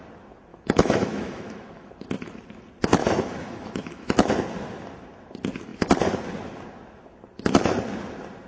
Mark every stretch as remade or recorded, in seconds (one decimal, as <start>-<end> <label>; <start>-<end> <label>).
0.0-0.5 recorded; 0.5-1.9 remade; 1.9-3.0 recorded; 3.0-4.3 remade; 4.3-8.5 recorded